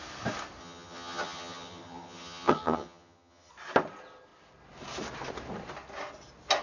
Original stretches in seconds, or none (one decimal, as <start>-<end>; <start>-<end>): 0.0-0.6; 3.5-6.6